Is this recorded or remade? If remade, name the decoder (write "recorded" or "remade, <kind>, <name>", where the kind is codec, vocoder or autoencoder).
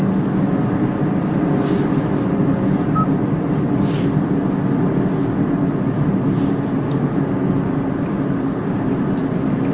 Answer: recorded